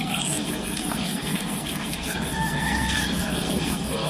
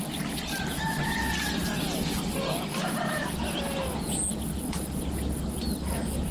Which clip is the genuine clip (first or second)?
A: second